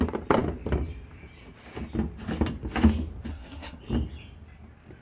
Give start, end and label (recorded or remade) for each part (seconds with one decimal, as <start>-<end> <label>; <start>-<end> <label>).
0.0-3.3 recorded; 3.3-3.8 remade; 3.8-5.0 recorded